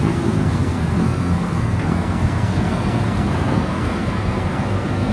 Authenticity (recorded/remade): remade